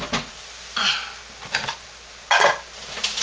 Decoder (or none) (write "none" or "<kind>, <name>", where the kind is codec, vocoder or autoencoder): none